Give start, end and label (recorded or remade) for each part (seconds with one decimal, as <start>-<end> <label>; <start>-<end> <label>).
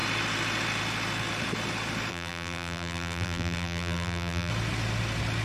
0.0-2.1 recorded; 2.1-4.5 remade; 4.5-5.4 recorded